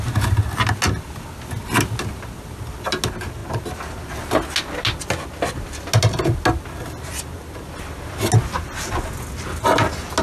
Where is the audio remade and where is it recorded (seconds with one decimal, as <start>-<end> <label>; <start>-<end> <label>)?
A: 0.0-10.2 recorded